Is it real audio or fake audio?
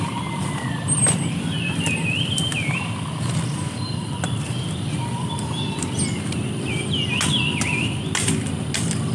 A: real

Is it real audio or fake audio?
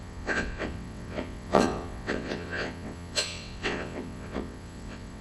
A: fake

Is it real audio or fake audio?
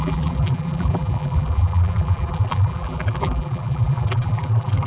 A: fake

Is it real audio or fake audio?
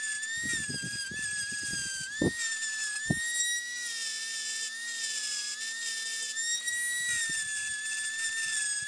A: real